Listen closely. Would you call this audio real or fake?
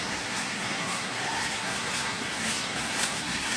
fake